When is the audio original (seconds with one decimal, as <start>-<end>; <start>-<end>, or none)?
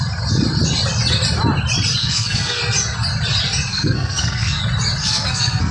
0.0-2.0; 2.6-3.7; 4.6-5.0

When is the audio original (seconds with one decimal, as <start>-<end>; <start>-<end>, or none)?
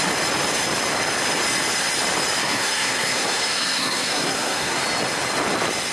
0.0-2.4; 4.8-5.9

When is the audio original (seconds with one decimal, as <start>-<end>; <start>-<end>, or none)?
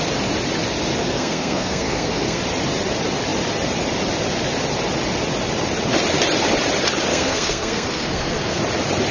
0.0-1.0; 2.4-7.1; 8.6-9.1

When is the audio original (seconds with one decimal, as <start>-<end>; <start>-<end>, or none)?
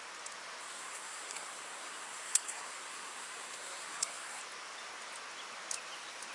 0.0-0.6; 4.4-6.3